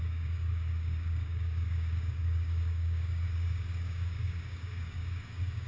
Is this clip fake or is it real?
fake